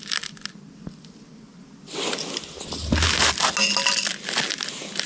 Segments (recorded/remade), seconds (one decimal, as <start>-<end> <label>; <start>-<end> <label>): 0.0-5.1 recorded